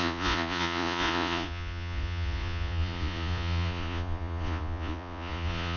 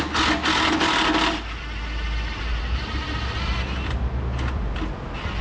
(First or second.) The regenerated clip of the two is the first